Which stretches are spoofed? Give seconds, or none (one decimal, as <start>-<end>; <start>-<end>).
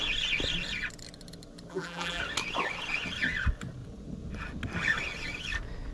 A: 1.7-2.2